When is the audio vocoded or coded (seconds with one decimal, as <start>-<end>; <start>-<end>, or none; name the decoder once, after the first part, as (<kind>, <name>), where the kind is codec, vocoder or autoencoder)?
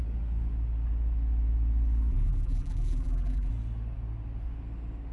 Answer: 2.1-3.5 (vocoder, BigVGAN v2)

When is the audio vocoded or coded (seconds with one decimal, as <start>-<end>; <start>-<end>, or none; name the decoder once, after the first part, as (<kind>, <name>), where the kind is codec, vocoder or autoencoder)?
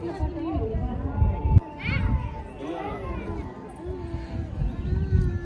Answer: none